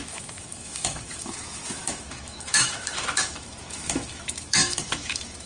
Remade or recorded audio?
remade